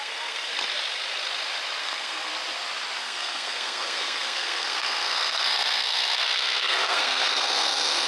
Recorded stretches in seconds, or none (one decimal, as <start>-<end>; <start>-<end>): 0.5-1.8; 2.3-3.0